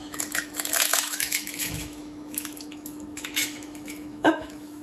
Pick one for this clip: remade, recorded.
remade